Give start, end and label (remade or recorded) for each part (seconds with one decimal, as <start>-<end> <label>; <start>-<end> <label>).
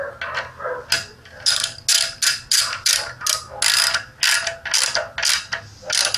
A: 0.0-6.2 recorded